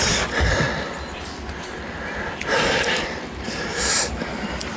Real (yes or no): yes